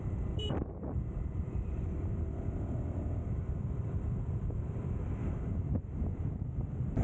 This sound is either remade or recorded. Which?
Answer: remade